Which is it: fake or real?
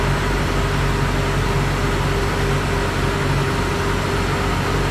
real